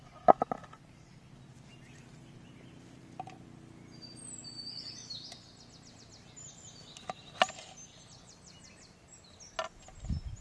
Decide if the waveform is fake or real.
real